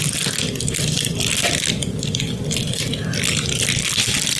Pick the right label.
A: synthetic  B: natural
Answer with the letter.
B